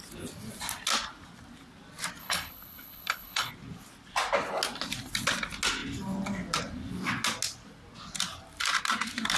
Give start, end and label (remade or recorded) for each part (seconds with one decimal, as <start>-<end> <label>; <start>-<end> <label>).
0.0-2.2 recorded; 2.2-3.5 remade; 3.5-9.4 recorded

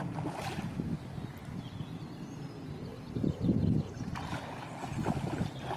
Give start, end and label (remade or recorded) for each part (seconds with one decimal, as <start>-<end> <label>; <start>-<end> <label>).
0.0-5.8 recorded

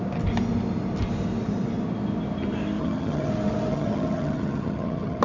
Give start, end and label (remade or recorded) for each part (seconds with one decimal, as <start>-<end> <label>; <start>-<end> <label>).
0.0-2.8 recorded; 2.8-3.3 remade; 3.3-3.7 recorded; 3.7-5.2 remade

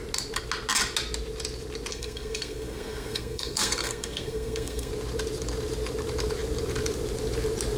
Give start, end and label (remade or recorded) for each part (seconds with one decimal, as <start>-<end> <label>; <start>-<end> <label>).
0.0-1.9 recorded; 1.9-4.9 remade; 4.9-7.8 recorded

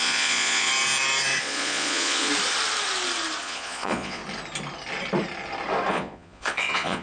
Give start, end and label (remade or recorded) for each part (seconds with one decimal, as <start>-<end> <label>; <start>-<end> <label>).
0.0-0.7 remade; 0.7-1.4 recorded; 1.4-2.3 remade; 2.3-3.4 recorded; 3.4-4.2 remade; 4.2-5.9 recorded; 5.9-7.0 remade

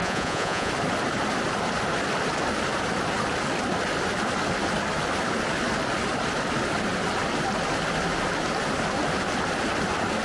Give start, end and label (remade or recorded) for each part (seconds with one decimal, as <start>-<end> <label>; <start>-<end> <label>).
0.0-0.7 remade; 0.7-10.2 recorded

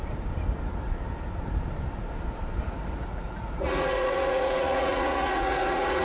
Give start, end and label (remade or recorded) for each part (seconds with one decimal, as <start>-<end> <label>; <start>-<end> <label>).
0.0-3.1 recorded; 3.1-6.0 remade